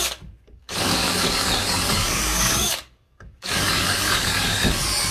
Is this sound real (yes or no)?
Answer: no